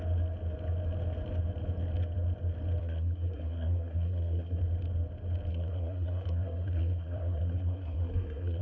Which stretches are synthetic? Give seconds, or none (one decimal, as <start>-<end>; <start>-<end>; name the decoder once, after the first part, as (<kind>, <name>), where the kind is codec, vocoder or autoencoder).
2.8-4.6 (codec, SNAC); 5.5-8.6